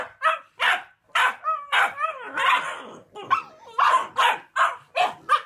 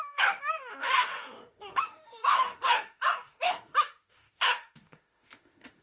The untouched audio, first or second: first